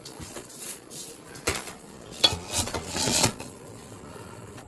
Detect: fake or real fake